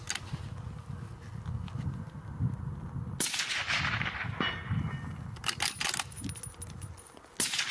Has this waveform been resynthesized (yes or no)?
no